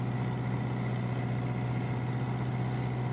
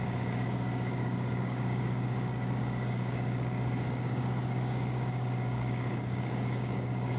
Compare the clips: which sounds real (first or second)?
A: first